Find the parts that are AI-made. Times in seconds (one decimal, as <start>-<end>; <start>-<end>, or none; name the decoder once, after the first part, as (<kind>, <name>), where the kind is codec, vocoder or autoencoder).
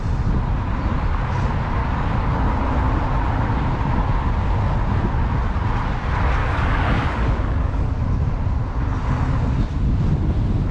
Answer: 1.8-2.3 (codec, DAC); 6.4-8.0